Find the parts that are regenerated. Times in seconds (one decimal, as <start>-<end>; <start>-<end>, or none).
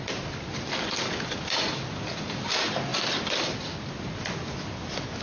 none